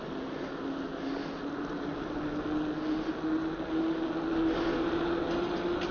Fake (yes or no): no